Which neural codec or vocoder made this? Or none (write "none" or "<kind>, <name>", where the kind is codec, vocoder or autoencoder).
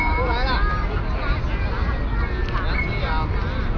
none